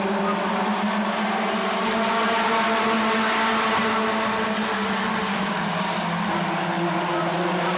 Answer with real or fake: real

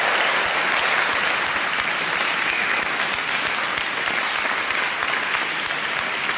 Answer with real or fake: real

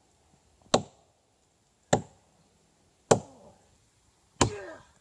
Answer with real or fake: real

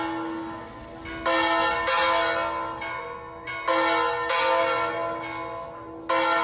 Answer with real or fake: real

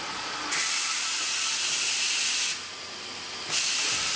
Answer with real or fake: real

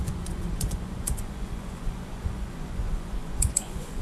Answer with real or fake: fake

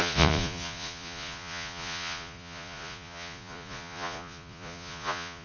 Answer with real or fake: fake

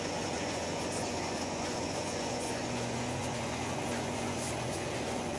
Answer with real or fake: fake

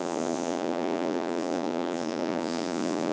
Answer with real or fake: fake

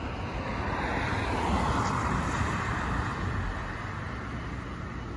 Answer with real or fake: real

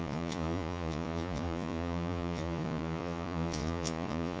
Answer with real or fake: fake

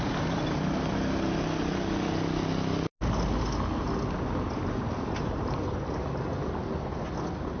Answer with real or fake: real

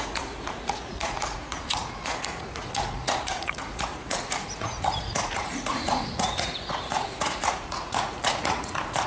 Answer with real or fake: fake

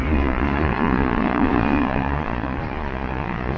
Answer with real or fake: fake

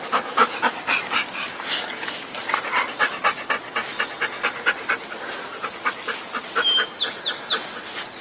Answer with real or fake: real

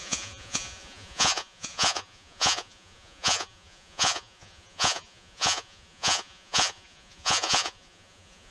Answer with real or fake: fake